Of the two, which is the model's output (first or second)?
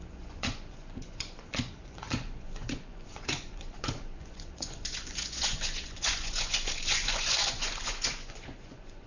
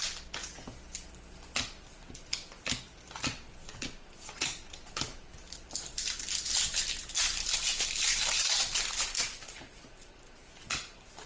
first